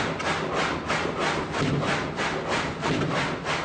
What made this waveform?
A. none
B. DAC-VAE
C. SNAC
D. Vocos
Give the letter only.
A